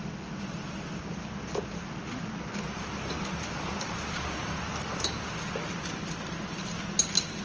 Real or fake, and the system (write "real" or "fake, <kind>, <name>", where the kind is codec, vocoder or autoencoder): real